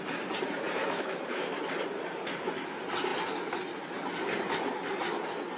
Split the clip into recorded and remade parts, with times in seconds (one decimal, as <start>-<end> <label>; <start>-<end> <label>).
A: 0.0-0.8 recorded; 0.8-1.6 remade; 1.6-5.6 recorded